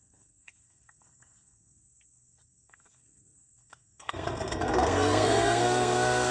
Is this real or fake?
fake